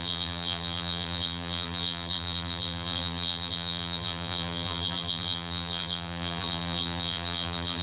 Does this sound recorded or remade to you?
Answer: remade